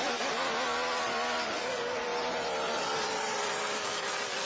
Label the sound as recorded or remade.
recorded